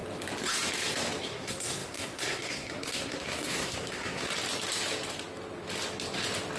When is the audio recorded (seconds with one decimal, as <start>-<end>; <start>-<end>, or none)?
0.0-1.2; 4.3-6.6